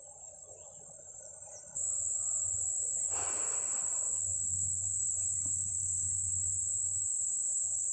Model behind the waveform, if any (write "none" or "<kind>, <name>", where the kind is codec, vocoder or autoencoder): none